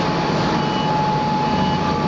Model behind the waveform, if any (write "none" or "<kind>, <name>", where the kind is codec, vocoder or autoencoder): none